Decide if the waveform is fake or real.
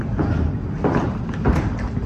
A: real